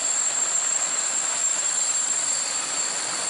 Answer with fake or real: fake